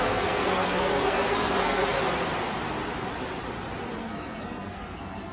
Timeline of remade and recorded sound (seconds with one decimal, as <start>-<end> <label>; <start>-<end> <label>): 0.0-1.8 remade; 1.8-4.0 recorded; 4.0-5.3 remade